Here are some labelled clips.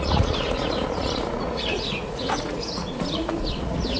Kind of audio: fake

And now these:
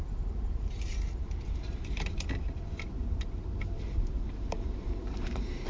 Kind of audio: fake